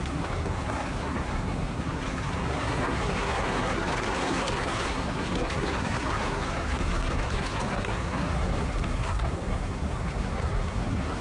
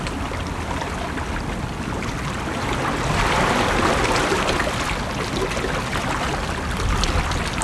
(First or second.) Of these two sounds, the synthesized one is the first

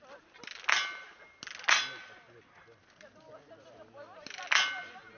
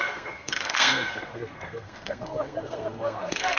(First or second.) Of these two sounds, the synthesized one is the second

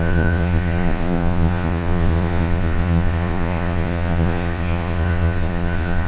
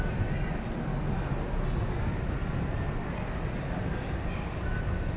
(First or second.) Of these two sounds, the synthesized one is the first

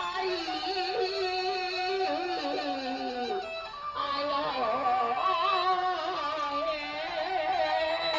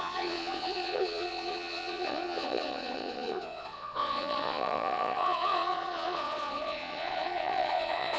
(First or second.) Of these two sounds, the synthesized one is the second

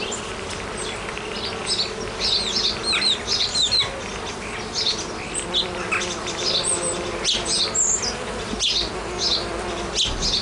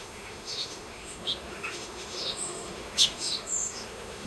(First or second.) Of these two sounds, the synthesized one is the second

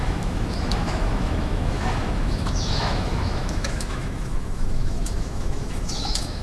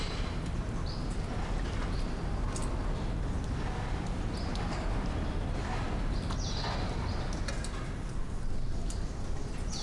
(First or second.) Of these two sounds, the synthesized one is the first